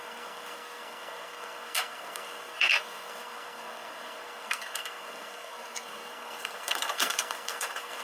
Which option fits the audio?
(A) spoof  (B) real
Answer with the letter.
A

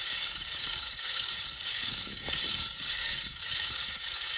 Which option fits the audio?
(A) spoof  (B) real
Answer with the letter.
A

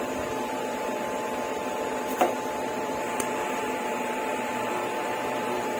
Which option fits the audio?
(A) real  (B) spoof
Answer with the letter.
B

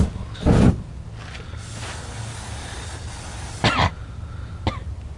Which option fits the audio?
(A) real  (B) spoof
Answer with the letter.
A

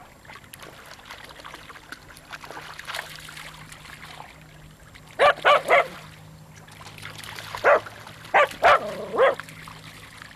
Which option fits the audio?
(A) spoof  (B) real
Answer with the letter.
B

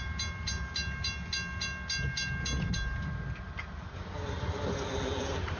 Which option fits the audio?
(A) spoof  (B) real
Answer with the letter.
B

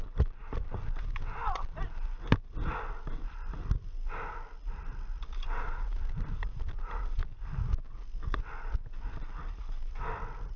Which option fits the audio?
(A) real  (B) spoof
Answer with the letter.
A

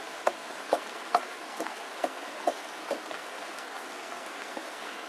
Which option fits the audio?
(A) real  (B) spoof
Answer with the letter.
B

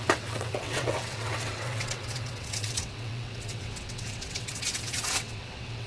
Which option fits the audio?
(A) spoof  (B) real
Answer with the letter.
A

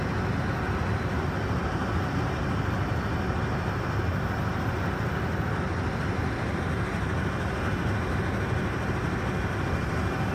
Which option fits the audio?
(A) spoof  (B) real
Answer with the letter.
B